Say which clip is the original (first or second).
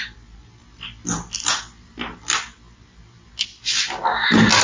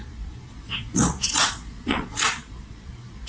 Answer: first